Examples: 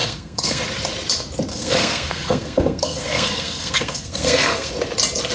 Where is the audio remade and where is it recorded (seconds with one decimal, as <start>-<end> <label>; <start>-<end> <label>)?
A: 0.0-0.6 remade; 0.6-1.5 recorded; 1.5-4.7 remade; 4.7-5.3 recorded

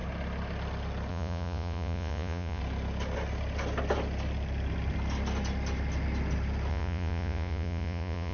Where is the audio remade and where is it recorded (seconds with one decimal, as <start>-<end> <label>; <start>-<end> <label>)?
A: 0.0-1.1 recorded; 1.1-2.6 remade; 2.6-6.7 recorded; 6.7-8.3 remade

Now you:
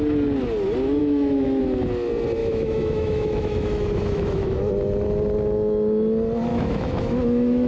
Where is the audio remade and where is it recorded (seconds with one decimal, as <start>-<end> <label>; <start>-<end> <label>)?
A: 0.0-1.0 recorded; 1.0-1.6 remade; 1.6-2.4 recorded; 2.4-4.7 remade; 4.7-6.5 recorded; 6.5-7.7 remade

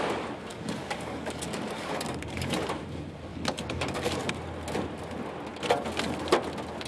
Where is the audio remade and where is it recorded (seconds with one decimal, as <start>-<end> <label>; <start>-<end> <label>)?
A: 0.0-0.5 recorded; 0.5-2.7 remade; 2.7-3.3 recorded; 3.3-4.3 remade; 4.3-6.9 recorded